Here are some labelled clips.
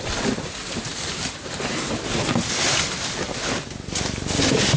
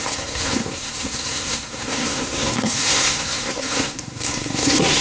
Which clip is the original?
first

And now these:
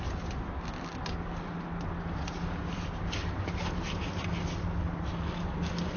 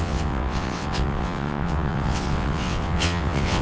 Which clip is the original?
first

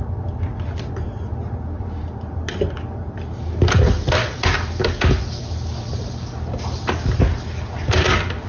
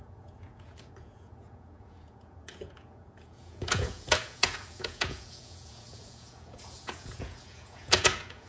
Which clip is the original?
first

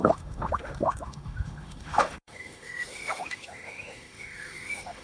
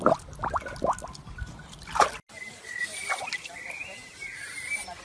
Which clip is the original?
second